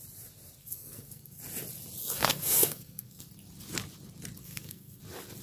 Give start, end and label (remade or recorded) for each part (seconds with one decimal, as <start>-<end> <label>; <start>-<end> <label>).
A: 0.0-0.6 recorded; 0.6-1.4 remade; 1.4-2.0 recorded; 2.0-3.3 remade; 3.3-4.4 recorded; 4.4-5.0 remade; 5.0-5.4 recorded